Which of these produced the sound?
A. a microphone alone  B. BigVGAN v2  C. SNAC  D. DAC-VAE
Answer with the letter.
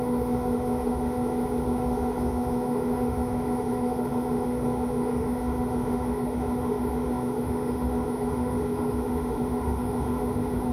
D